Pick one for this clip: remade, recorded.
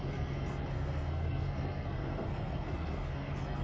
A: remade